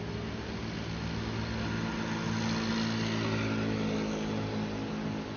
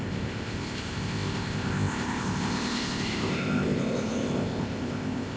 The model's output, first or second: second